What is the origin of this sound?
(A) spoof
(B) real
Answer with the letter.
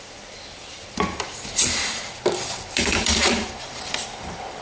A